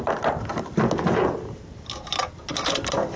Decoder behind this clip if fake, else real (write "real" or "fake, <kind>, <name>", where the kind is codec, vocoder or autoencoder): real